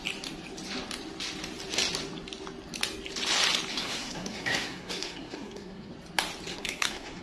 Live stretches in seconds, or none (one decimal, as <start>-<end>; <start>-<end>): 0.0-3.7; 5.9-6.5